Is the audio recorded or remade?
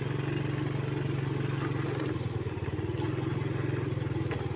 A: recorded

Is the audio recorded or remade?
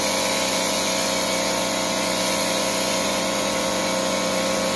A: remade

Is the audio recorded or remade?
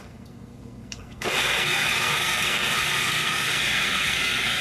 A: remade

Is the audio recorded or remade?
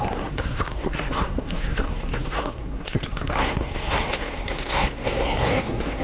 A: remade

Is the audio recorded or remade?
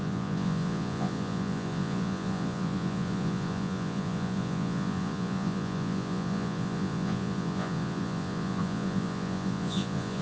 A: remade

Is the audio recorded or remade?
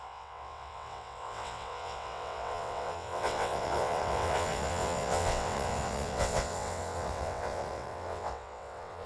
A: remade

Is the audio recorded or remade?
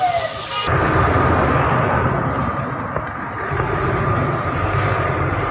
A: recorded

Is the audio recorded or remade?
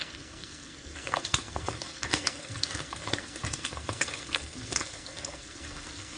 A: remade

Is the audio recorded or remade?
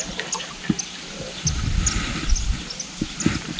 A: recorded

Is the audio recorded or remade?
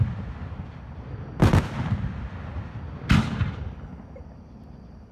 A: recorded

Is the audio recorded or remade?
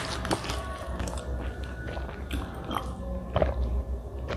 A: recorded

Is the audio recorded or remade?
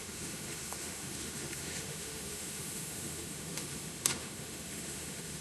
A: remade